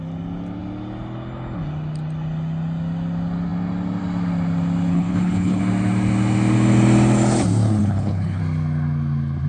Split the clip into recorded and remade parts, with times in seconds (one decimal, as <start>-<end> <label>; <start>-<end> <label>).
0.0-4.9 recorded; 4.9-5.6 remade; 5.6-7.8 recorded; 7.8-8.4 remade; 8.4-9.5 recorded